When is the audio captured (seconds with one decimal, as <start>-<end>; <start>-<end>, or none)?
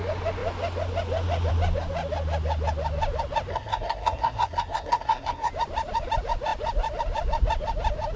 0.0-3.5; 5.5-8.2